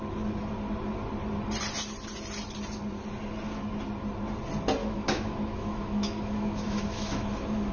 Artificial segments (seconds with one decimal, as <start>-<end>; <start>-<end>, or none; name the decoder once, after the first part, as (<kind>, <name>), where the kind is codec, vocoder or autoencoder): 4.8-7.7 (autoencoder, DAC-VAE)